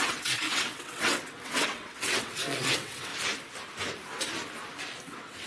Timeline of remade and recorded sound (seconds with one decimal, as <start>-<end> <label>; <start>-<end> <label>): 0.0-3.1 remade; 3.1-5.0 recorded; 5.0-5.5 remade